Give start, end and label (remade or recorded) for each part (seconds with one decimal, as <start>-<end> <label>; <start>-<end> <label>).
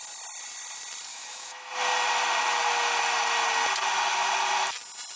0.0-1.1 recorded; 1.1-1.7 remade; 1.7-5.2 recorded